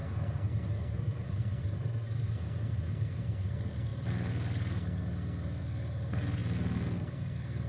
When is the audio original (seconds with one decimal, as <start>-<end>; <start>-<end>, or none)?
none

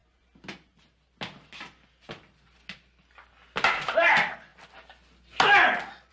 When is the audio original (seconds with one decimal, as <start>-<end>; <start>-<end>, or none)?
0.0-6.1

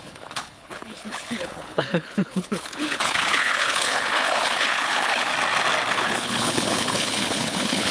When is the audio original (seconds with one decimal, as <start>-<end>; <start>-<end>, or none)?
5.3-5.9

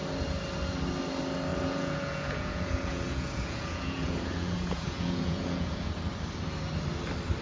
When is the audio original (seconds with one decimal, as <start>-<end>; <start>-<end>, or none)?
0.0-1.5; 5.9-7.4

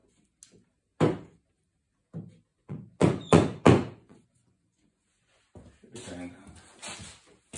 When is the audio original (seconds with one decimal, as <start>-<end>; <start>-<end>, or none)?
0.0-2.5; 5.4-7.6

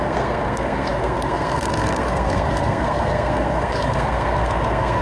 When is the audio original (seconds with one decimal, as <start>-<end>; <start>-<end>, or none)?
none

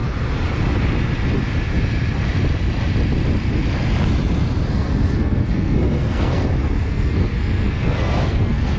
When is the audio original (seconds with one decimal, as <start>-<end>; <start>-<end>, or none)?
0.0-4.7

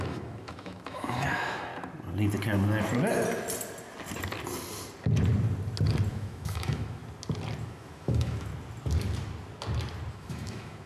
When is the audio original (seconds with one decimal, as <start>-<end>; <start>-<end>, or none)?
1.7-6.1; 7.0-7.6; 8.5-10.1